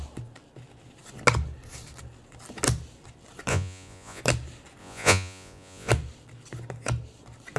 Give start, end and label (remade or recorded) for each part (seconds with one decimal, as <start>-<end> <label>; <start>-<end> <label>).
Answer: 0.0-3.5 recorded; 3.5-4.2 remade; 4.2-4.8 recorded; 4.8-5.9 remade; 5.9-7.6 recorded